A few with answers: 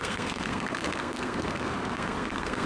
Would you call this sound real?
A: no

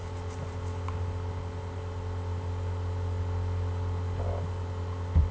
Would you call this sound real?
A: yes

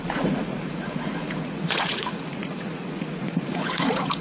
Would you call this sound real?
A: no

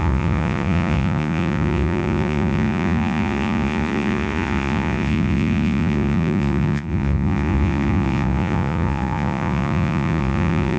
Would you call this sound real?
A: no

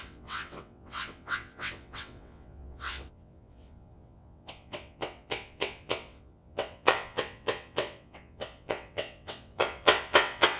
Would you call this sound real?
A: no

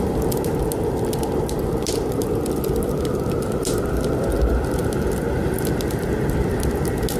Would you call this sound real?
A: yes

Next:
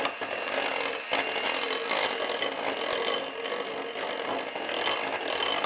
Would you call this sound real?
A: yes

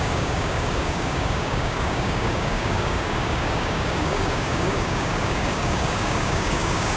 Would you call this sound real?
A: no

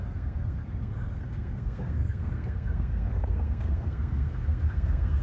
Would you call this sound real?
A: no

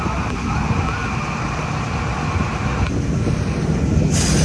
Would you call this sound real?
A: yes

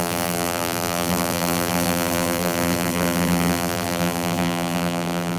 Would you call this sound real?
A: no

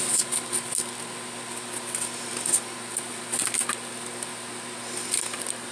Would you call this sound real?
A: yes